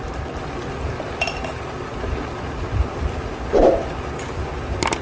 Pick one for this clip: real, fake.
real